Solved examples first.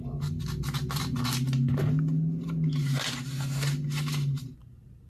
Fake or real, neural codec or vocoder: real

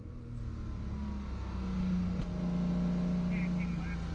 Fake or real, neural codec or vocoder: real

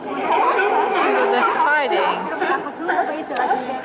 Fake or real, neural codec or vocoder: real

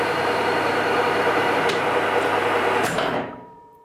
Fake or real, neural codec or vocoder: fake, vocoder, BigVGAN v2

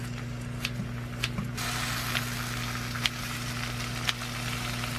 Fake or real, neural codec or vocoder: real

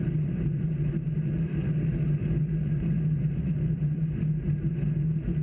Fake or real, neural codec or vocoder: fake, vocoder, BigVGAN v2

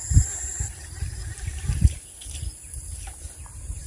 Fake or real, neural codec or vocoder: fake, vocoder, BigVGAN v2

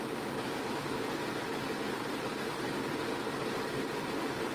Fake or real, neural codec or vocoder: real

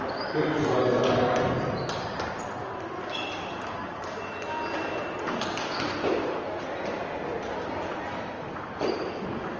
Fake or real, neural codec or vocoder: real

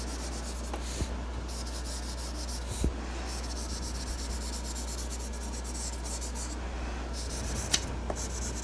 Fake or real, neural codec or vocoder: real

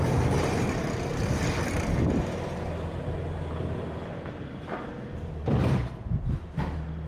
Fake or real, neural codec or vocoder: fake, vocoder, BigVGAN v2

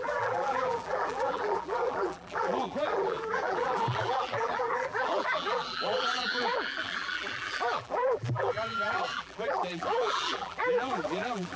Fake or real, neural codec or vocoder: fake, vocoder, BigVGAN v2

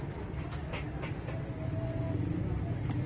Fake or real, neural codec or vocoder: real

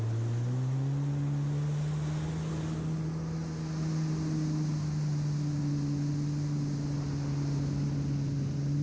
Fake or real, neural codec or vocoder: real